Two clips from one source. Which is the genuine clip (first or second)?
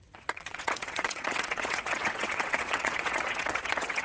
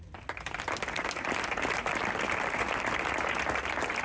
second